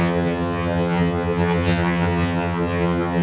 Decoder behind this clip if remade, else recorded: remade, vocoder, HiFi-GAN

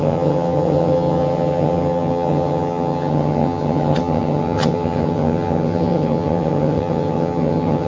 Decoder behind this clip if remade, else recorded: remade, vocoder, HiFi-GAN